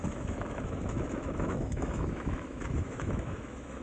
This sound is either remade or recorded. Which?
remade